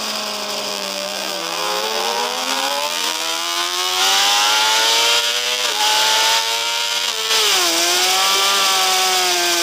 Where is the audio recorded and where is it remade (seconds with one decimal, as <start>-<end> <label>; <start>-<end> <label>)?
0.0-0.7 recorded; 0.7-4.0 remade; 4.0-5.2 recorded; 5.2-5.8 remade; 5.8-6.4 recorded; 6.4-7.3 remade; 7.3-9.6 recorded